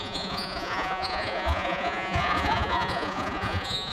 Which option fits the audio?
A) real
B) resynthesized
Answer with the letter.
B